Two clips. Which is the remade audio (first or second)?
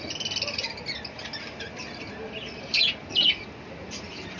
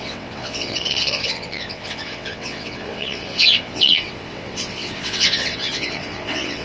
second